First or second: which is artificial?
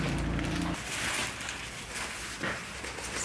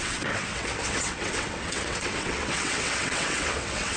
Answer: second